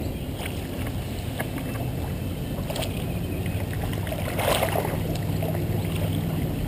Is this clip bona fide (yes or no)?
yes